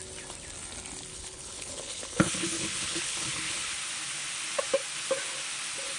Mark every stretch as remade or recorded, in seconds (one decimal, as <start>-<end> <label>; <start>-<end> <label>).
0.0-1.1 recorded; 1.1-3.7 remade; 3.7-6.0 recorded